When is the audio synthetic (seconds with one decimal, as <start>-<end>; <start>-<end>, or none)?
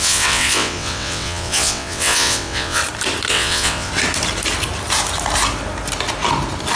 0.0-2.8; 3.3-3.9